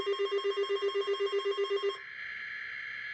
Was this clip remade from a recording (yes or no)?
no